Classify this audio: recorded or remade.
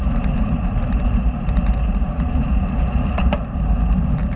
remade